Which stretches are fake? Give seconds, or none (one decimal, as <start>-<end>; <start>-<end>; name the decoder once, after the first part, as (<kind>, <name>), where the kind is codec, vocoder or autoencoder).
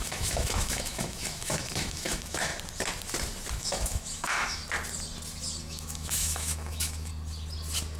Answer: 0.0-2.5 (autoencoder, DAC-VAE); 3.5-4.6; 5.6-7.1